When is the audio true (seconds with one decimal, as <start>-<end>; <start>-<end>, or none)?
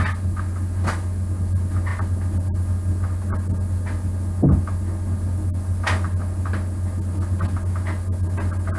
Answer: 0.0-8.8